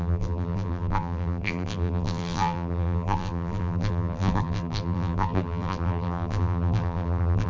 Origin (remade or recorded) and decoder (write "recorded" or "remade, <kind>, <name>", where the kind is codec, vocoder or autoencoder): remade, vocoder, BigVGAN v2